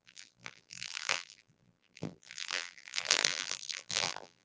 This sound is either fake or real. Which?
fake